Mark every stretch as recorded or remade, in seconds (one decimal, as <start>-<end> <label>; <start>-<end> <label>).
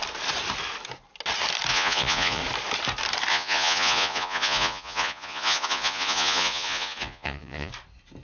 0.0-1.7 recorded; 1.7-2.4 remade; 2.4-3.3 recorded; 3.3-7.7 remade; 7.7-8.2 recorded